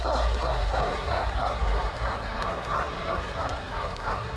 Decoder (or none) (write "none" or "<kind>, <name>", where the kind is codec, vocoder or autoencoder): codec, SNAC